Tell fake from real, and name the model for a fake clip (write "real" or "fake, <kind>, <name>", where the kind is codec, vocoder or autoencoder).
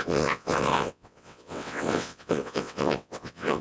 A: fake, vocoder, WaveNeXt